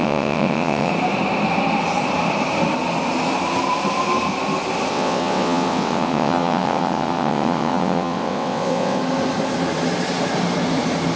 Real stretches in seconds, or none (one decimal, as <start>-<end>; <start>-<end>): 0.9-4.9; 9.0-11.2